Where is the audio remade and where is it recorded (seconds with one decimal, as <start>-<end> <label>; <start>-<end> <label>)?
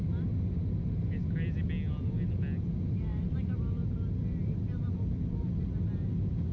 0.0-6.5 recorded